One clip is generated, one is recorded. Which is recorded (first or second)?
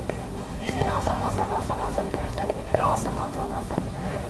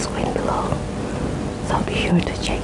second